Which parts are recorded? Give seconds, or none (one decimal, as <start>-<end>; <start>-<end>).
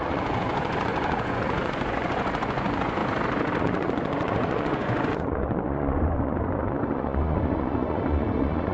3.0-3.6